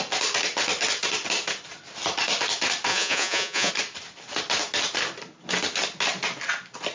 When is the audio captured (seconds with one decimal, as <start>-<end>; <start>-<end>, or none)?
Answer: 0.0-2.9; 3.7-6.9